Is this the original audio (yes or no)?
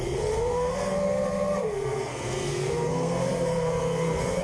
no